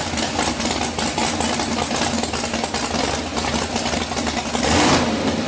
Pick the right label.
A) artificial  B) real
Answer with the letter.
B